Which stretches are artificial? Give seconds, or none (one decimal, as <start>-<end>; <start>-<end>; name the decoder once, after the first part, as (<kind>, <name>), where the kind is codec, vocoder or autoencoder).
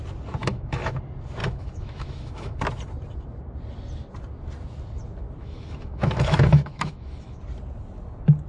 0.4-1.0 (autoencoder, DAC-VAE); 1.4-2.6; 5.4-7.4